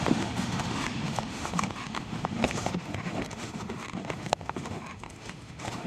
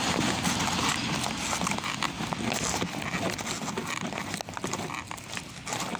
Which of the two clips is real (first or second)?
second